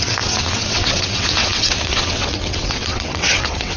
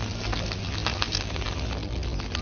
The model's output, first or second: first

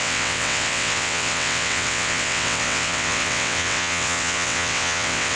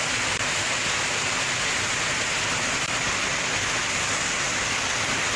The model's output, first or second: first